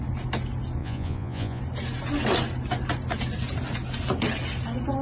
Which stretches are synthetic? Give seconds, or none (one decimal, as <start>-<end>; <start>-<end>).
0.8-1.6